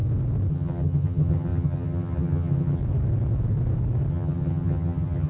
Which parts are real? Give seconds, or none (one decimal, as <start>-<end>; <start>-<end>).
0.0-0.5; 2.8-4.1